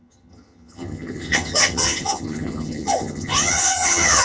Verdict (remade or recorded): remade